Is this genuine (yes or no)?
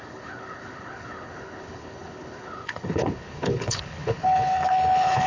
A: no